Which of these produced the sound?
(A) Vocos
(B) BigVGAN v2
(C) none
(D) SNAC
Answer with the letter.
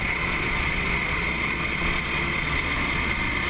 A